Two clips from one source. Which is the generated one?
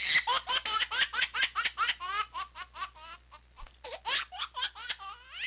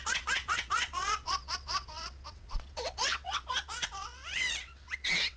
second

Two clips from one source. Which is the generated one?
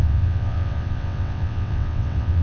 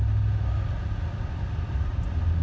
first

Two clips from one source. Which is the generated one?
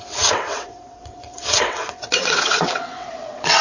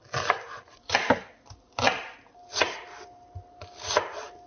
first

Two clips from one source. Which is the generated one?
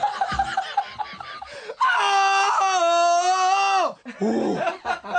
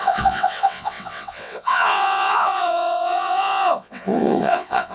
second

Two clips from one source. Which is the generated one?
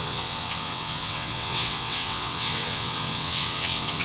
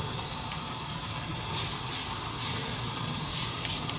first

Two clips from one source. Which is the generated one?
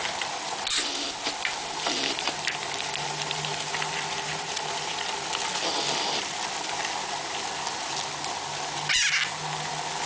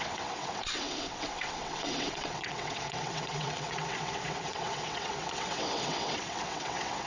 second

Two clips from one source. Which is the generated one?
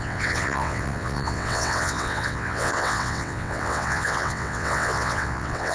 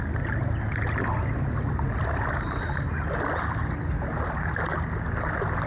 first